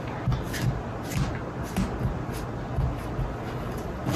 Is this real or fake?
real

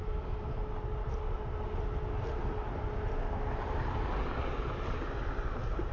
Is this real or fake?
real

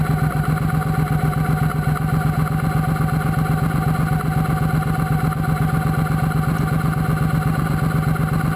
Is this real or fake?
real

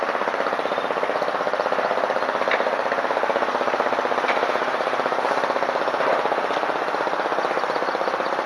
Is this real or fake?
real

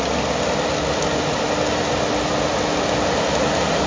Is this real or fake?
real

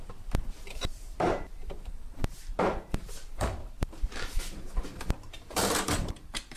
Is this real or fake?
fake